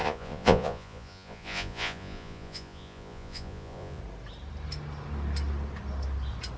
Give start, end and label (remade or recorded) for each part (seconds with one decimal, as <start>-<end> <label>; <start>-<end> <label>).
0.0-4.0 remade; 4.0-6.6 recorded